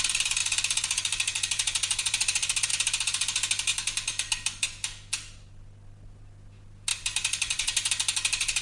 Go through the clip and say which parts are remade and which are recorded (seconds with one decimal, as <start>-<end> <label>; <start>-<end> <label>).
0.0-0.4 recorded; 0.4-2.7 remade; 2.7-6.9 recorded; 6.9-7.9 remade; 7.9-8.6 recorded